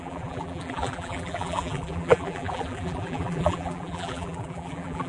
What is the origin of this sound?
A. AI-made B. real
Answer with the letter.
A